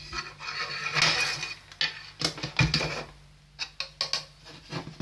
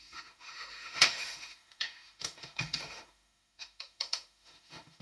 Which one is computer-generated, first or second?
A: second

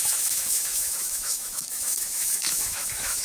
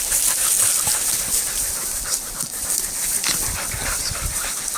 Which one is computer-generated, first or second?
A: first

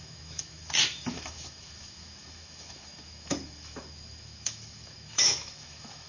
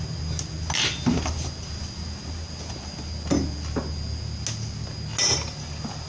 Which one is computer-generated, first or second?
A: first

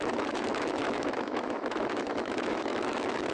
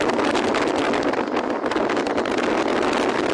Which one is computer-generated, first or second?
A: first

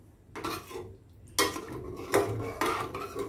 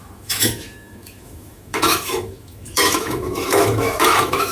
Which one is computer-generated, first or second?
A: second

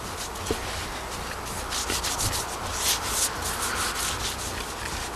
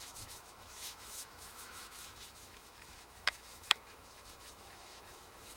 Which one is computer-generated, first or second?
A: second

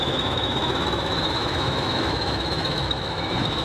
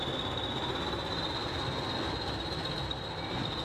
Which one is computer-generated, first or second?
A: first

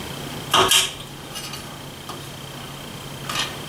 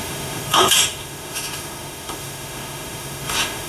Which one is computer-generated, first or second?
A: second